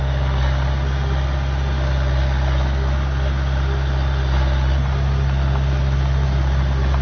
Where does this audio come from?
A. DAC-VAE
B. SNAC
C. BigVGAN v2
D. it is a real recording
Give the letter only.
D